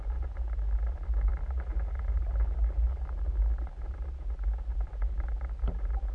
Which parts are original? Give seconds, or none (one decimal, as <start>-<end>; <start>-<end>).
0.0-6.1